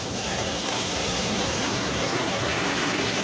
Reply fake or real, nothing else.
fake